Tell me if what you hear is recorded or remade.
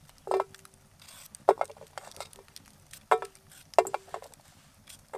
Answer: recorded